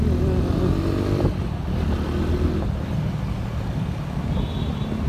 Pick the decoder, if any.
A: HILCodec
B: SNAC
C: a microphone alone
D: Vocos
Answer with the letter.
C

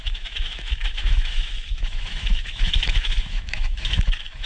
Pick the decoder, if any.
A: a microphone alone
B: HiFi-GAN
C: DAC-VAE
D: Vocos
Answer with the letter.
C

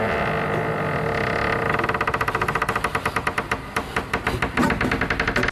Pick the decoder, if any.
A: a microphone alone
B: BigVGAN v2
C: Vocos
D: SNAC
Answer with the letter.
A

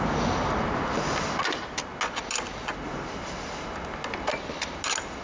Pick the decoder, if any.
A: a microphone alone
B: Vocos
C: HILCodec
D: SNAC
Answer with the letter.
A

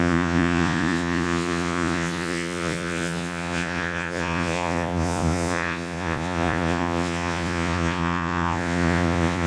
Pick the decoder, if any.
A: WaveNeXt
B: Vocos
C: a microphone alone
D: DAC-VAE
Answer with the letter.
B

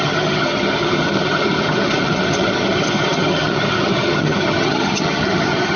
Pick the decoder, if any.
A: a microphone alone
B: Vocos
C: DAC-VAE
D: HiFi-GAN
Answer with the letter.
D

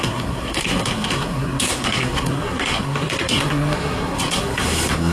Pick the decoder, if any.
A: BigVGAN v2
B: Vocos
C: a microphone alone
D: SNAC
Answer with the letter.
D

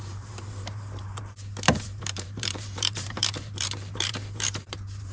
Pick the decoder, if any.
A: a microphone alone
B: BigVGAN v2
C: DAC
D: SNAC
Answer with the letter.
B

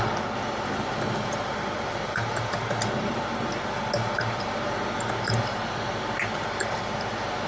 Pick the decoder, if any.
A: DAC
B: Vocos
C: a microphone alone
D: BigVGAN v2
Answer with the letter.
C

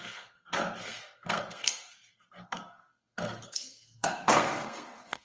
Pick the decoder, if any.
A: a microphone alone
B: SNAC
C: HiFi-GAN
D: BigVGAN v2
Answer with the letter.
B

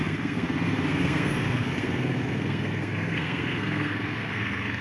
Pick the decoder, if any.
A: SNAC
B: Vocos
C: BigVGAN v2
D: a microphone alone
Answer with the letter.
A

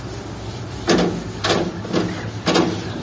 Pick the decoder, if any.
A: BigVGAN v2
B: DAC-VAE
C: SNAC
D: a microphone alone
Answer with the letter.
D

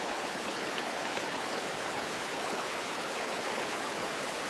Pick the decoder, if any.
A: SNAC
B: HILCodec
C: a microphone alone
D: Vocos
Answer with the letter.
B